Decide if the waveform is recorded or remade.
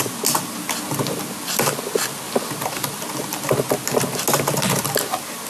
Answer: recorded